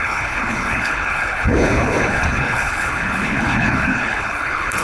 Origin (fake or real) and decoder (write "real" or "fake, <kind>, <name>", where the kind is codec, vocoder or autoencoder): fake, codec, HILCodec